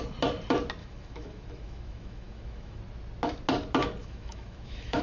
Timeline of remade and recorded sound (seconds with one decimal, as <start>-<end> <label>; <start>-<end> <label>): 0.0-0.8 recorded; 0.8-2.8 remade; 2.8-4.0 recorded; 4.0-5.0 remade